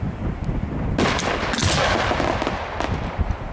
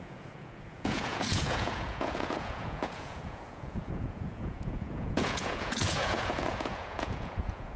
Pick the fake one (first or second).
second